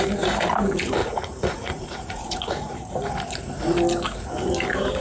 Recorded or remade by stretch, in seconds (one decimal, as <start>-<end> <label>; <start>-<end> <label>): 0.0-1.0 recorded; 1.0-3.1 remade; 3.1-5.0 recorded